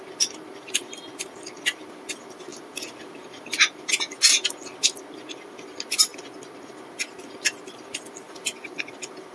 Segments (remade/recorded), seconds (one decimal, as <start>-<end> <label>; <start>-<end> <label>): 0.0-9.3 recorded